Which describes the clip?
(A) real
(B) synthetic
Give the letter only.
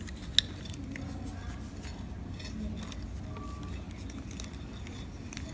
A